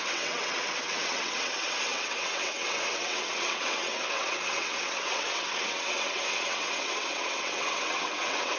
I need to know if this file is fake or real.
fake